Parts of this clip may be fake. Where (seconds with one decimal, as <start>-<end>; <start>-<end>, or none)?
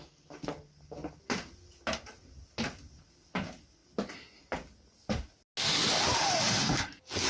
none